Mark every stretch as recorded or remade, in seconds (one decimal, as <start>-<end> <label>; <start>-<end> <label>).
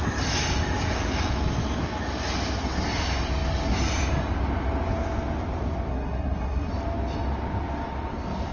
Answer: 0.0-5.9 recorded; 5.9-6.7 remade; 6.7-8.5 recorded